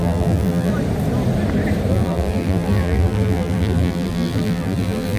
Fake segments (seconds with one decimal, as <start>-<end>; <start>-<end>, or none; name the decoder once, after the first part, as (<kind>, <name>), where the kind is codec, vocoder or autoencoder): 0.0-0.7 (vocoder, BigVGAN v2); 1.9-5.2